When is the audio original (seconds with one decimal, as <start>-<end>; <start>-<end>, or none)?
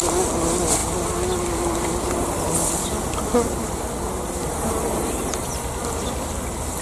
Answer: 0.0-6.8